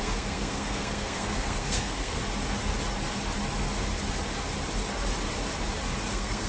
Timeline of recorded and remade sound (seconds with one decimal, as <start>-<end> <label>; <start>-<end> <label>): 0.0-2.2 remade; 2.2-6.1 recorded; 6.1-6.5 remade